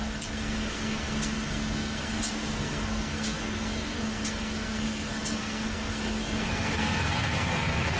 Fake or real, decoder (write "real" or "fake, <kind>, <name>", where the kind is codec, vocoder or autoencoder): fake, codec, SNAC